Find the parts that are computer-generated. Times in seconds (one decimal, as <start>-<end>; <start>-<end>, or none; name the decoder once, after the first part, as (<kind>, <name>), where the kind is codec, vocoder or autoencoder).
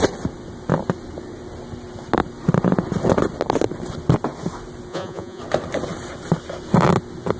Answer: 4.9-5.4 (vocoder, Vocos)